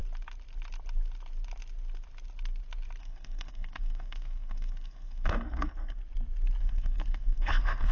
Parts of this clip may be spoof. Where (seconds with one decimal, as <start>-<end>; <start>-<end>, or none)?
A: 3.0-6.0; 6.6-7.9